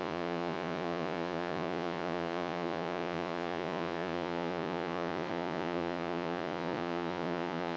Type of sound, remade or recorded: remade